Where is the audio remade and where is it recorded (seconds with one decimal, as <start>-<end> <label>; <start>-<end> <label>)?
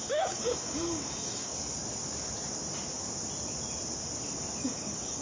0.0-1.5 remade; 1.5-4.6 recorded; 4.6-5.2 remade